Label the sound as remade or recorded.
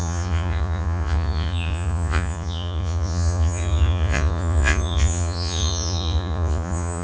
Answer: remade